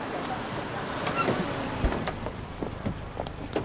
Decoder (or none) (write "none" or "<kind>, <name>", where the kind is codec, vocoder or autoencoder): vocoder, BigVGAN v2